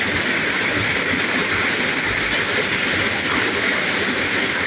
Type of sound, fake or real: real